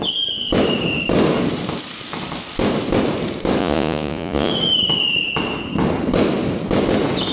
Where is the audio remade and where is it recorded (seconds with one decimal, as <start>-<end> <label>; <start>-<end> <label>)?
0.0-3.6 recorded; 3.6-4.5 remade; 4.5-7.3 recorded

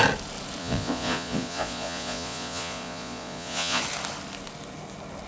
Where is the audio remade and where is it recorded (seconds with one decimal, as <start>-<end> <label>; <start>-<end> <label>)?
0.0-0.6 recorded; 0.6-3.8 remade; 3.8-5.3 recorded

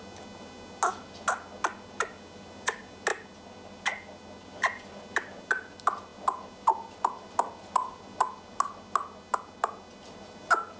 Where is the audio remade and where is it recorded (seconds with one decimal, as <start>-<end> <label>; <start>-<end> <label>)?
0.0-10.8 recorded

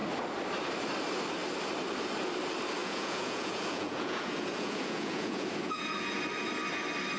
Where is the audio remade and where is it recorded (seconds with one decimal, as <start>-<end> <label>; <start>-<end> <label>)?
0.0-2.8 recorded; 2.8-6.2 remade; 6.2-7.2 recorded

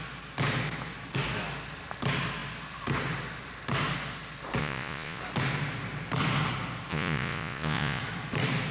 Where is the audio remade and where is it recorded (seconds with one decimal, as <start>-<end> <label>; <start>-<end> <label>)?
0.0-4.6 recorded; 4.6-5.2 remade; 5.2-6.9 recorded; 6.9-8.0 remade; 8.0-8.7 recorded

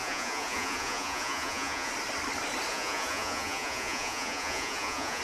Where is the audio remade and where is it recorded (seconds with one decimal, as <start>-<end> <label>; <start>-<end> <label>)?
0.0-1.9 remade; 1.9-2.7 recorded; 2.7-5.2 remade

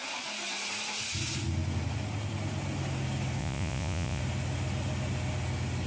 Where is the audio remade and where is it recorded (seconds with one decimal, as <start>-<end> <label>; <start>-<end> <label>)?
0.0-3.4 recorded; 3.4-4.2 remade; 4.2-5.9 recorded

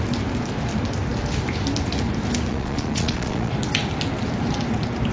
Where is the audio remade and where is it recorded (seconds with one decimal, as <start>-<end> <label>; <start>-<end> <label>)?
0.0-2.5 recorded; 2.5-3.5 remade; 3.5-5.1 recorded